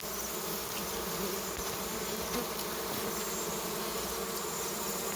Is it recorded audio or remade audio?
recorded